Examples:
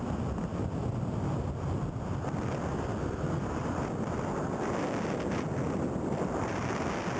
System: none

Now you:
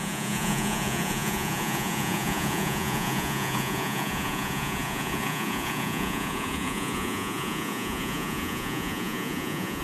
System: vocoder, Vocos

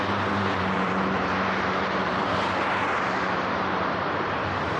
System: vocoder, BigVGAN v2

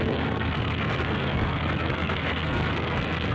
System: codec, SNAC